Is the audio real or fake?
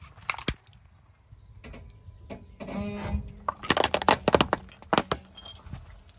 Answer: real